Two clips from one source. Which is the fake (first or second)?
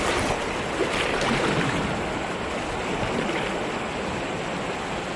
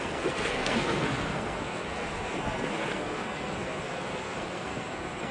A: second